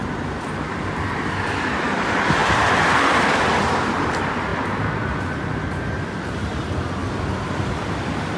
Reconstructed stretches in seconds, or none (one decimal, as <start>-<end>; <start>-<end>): 0.7-4.5; 6.6-7.0; 7.5-8.4